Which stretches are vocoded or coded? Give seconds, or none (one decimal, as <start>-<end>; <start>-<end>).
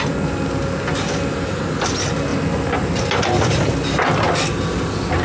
none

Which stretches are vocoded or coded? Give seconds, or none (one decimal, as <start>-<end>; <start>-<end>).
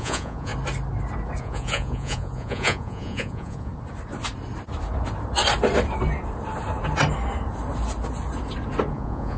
0.0-0.5; 1.4-3.7; 8.9-9.4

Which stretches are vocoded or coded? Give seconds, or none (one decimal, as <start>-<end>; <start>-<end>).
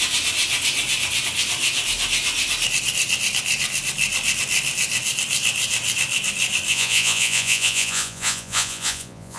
6.7-9.4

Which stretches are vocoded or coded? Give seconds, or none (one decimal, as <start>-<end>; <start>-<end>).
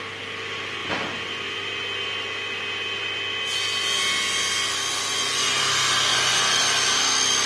5.1-5.6; 6.1-6.6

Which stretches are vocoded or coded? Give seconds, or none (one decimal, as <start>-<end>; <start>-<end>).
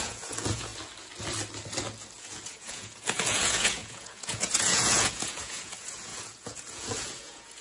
0.0-0.7; 2.2-7.6